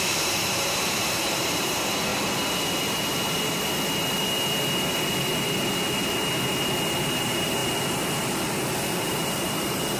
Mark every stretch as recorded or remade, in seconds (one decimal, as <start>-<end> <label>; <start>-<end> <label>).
0.0-2.1 remade; 2.1-7.1 recorded; 7.1-7.6 remade; 7.6-8.9 recorded; 8.9-10.0 remade